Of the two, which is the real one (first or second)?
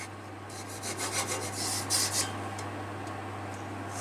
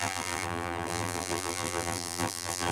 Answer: first